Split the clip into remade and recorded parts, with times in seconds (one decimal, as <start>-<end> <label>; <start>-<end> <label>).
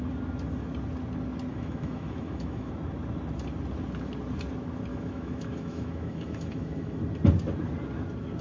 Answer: 0.0-1.5 recorded; 1.5-2.7 remade; 2.7-4.9 recorded; 4.9-7.0 remade; 7.0-8.4 recorded